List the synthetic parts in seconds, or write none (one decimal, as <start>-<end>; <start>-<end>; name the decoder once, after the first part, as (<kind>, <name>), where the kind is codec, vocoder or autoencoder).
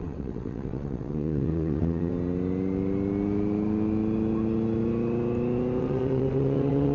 0.0-2.1 (vocoder, WaveNeXt); 5.8-6.9